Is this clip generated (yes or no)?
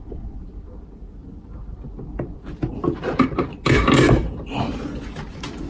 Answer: no